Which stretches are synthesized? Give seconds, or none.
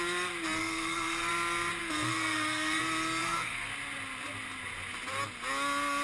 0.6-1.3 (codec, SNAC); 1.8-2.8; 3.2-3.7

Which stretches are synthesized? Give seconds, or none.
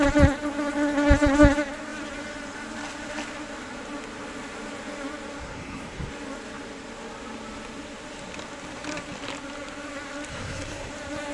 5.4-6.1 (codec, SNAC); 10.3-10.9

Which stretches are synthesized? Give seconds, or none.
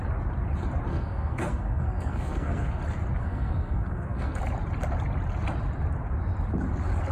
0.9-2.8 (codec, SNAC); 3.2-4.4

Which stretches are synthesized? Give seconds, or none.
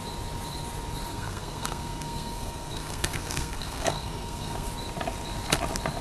1.1-4.7 (codec, SNAC)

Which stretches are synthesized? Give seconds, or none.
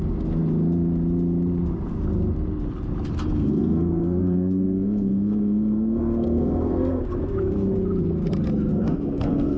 3.4-7.0 (codec, SNAC); 8.7-9.6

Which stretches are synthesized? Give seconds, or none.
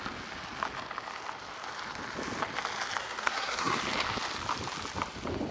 3.0-3.8 (codec, SNAC)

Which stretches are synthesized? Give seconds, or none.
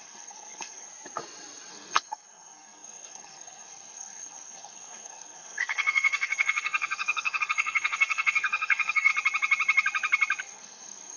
0.0-0.9 (codec, SNAC); 1.7-9.1; 10.4-11.2